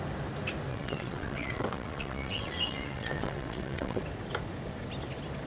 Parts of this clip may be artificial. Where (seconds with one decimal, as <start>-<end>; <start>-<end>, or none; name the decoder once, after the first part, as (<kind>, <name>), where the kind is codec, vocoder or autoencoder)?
0.7-4.0 (vocoder, WaveNeXt)